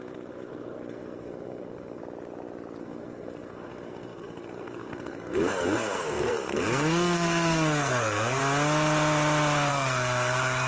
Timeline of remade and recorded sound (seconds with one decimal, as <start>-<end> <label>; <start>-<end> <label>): 0.0-2.0 remade; 2.0-2.8 recorded; 2.8-8.4 remade; 8.4-9.7 recorded; 9.7-10.7 remade